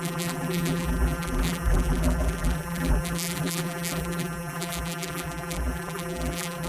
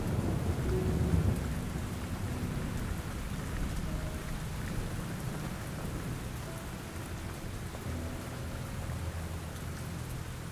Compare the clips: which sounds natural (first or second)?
second